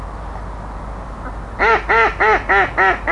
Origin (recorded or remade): recorded